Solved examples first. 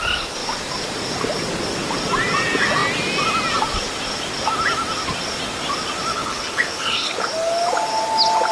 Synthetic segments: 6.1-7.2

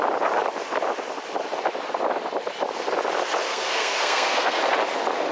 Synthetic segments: 3.5-4.6

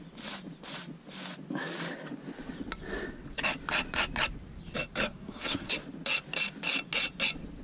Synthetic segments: 5.0-5.7